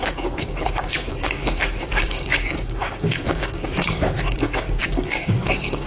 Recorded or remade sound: remade